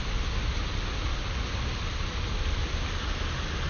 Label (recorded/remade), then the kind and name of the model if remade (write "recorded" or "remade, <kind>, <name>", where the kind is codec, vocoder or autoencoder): recorded